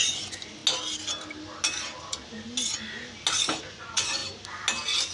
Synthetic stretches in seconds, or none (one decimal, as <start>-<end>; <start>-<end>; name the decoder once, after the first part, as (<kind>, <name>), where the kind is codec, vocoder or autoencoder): 0.0-0.6 (vocoder, Vocos); 3.7-4.2